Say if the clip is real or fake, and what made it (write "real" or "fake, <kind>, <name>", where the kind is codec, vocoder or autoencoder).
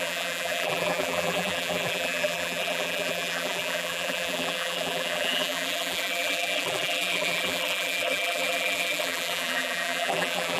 fake, vocoder, BigVGAN v2